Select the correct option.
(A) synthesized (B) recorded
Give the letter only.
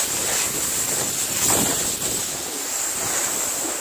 B